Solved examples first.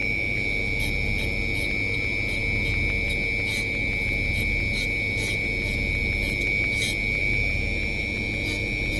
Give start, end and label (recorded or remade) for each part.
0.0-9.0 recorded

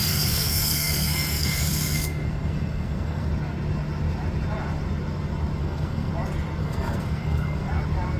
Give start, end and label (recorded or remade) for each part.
0.0-3.3 remade; 3.3-5.6 recorded; 5.6-6.1 remade; 6.1-6.6 recorded; 6.6-7.7 remade; 7.7-8.2 recorded

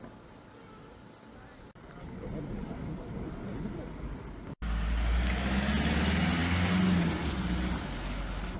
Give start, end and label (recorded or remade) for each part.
0.0-8.6 recorded

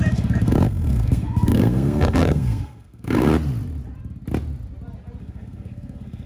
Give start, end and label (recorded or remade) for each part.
0.0-3.3 remade; 3.3-5.2 recorded; 5.2-6.3 remade

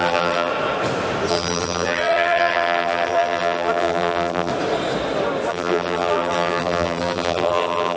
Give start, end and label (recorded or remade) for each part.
0.0-0.5 remade; 0.5-1.3 recorded; 1.3-4.5 remade; 4.5-5.5 recorded; 5.5-8.0 remade

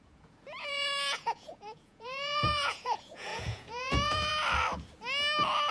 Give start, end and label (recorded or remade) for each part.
0.0-4.3 remade; 4.3-5.7 recorded

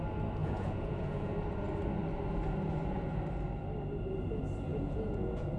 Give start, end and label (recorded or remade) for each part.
0.0-0.4 recorded; 0.4-1.3 remade; 1.3-4.7 recorded; 4.7-5.6 remade

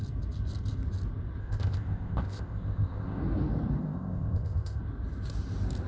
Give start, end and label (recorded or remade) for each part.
0.0-1.4 recorded; 1.4-3.2 remade; 3.2-3.8 recorded; 3.8-4.8 remade; 4.8-5.9 recorded